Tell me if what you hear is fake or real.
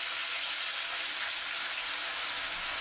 real